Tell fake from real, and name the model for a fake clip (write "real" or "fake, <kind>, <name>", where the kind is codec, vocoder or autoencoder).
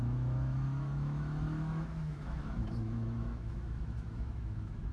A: fake, autoencoder, DAC-VAE